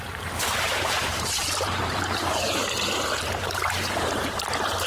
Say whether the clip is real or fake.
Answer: fake